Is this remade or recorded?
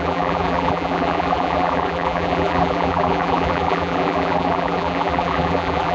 remade